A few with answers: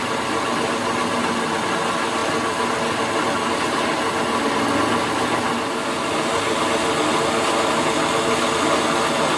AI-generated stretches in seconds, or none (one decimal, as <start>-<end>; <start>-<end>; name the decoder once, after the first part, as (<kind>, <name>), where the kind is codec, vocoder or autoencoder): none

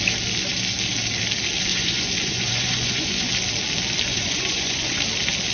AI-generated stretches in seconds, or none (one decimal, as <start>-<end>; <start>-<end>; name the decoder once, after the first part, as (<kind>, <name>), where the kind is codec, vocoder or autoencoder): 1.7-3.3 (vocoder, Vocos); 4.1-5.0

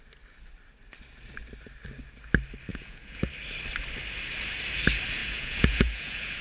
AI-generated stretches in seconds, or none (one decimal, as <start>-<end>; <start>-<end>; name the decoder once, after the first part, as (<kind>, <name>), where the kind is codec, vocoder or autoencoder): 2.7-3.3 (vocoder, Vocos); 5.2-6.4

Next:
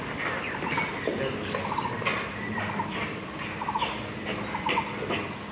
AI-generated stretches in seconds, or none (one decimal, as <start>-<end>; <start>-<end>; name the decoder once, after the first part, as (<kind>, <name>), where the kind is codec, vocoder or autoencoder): none

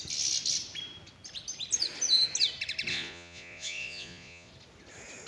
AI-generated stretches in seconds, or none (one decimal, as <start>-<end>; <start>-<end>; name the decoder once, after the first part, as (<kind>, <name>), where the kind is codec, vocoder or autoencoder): 2.9-4.5 (vocoder, Vocos)

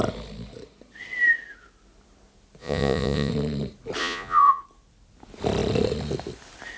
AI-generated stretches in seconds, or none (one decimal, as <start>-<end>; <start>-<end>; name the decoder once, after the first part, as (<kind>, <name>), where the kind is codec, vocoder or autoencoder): 2.6-3.3 (vocoder, Vocos); 4.0-4.6